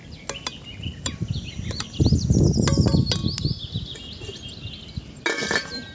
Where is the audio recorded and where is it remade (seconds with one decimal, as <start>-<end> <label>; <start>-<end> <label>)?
0.0-5.9 recorded